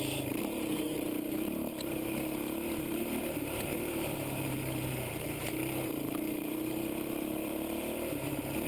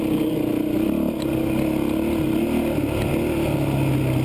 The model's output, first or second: first